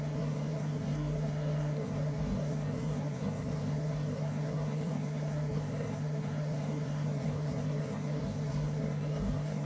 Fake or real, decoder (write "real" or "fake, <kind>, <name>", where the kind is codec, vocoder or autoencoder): fake, codec, SNAC